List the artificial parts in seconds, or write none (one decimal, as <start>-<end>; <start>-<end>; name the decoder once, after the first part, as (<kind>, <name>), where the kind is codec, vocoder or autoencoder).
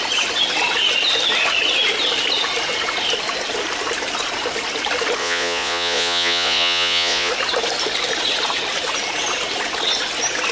5.2-7.3 (vocoder, Vocos)